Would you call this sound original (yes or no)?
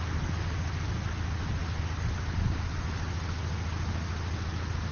yes